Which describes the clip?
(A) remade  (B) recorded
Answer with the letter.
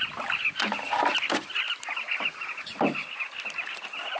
B